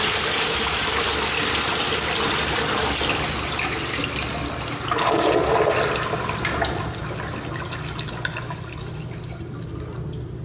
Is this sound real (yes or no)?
yes